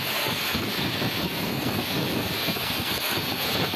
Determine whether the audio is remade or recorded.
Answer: remade